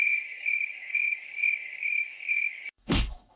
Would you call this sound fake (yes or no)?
yes